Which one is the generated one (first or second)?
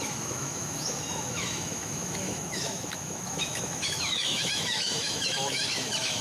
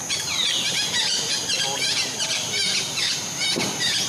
first